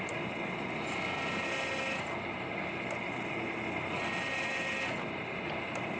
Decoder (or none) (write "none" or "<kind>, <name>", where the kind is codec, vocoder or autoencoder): none